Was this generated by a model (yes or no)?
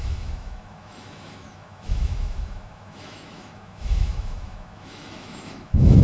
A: yes